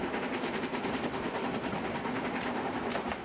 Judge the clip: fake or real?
real